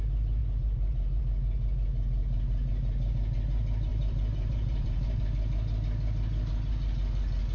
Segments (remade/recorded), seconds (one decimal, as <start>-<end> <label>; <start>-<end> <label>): 0.0-0.4 recorded; 0.4-1.2 remade; 1.2-3.9 recorded; 3.9-5.2 remade; 5.2-7.5 recorded